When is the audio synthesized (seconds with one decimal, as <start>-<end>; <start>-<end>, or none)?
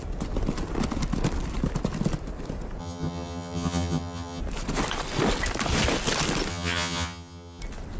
2.8-4.4; 6.5-7.6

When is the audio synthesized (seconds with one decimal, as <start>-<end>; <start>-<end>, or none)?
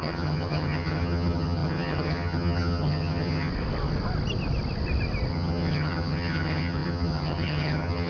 0.0-3.5; 5.3-8.1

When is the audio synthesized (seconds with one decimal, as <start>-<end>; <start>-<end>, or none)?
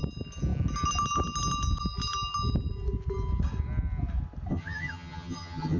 4.5-5.8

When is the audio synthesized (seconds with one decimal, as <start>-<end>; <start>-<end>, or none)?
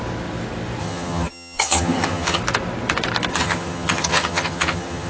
0.8-2.4; 3.3-5.1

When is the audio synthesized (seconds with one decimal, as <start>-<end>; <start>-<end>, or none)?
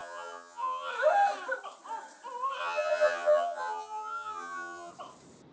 0.0-0.9; 2.6-4.9